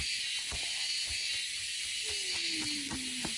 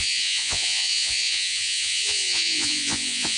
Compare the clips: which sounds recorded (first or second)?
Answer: first